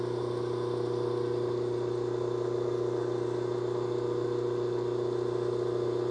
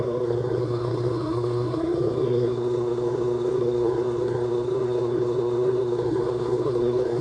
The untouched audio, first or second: first